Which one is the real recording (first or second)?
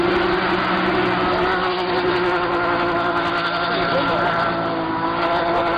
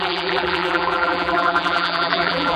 first